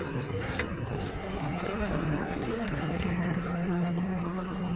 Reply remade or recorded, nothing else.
remade